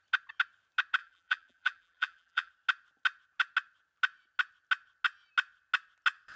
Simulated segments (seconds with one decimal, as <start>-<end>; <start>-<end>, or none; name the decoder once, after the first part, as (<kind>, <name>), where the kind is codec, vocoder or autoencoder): 1.0-2.5 (vocoder, BigVGAN v2)

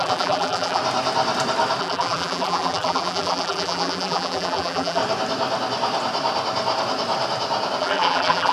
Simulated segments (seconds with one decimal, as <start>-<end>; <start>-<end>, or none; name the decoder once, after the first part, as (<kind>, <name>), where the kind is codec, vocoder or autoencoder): 0.0-0.8 (vocoder, BigVGAN v2); 1.8-5.0; 7.8-8.5

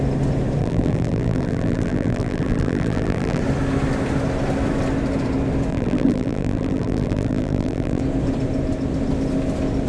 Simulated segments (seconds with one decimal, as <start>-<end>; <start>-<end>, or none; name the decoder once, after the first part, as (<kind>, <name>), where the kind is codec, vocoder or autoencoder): 0.6-3.4 (vocoder, BigVGAN v2); 5.7-8.0